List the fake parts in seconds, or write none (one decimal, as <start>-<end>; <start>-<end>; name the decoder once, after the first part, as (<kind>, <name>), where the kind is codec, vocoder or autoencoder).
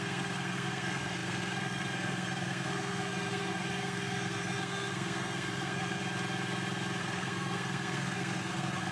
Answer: 0.0-6.0 (codec, SNAC); 7.0-8.9